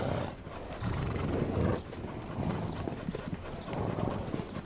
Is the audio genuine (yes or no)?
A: yes